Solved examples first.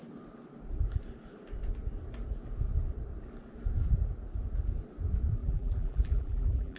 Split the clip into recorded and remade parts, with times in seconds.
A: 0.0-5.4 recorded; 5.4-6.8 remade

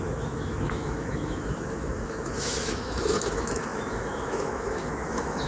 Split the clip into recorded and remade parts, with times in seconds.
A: 0.0-5.5 remade